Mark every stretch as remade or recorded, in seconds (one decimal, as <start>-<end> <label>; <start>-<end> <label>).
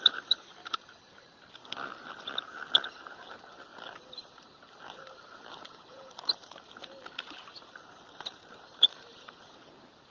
0.0-1.6 remade; 1.6-2.9 recorded; 2.9-3.7 remade; 3.7-4.2 recorded; 4.2-10.1 remade